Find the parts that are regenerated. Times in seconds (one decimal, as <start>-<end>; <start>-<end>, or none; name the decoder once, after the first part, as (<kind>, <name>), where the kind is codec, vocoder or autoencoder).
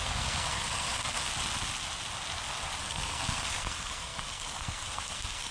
0.0-1.3 (codec, SNAC); 2.8-5.5